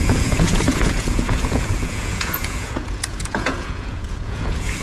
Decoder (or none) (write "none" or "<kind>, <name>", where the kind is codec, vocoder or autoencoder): vocoder, Vocos